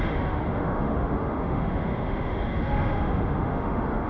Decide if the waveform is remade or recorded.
remade